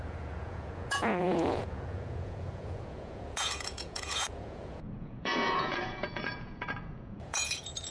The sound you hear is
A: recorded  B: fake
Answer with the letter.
B